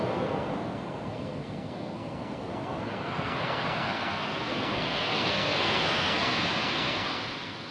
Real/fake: fake